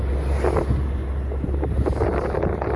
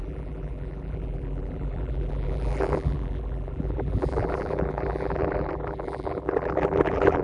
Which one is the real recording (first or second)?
first